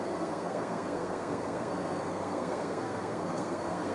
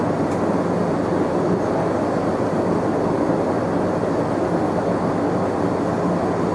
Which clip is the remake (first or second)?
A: first